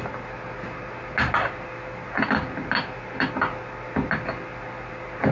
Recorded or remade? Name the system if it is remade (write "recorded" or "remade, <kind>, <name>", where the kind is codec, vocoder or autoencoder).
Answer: recorded